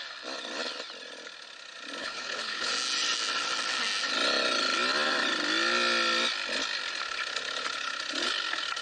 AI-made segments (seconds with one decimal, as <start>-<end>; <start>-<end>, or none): 2.0-2.7